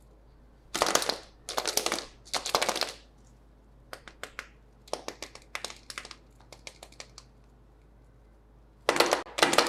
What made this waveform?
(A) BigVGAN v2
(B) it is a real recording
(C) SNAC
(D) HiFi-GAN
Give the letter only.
B